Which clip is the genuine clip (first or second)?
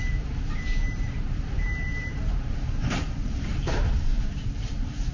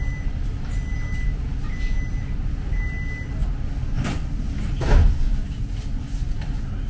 second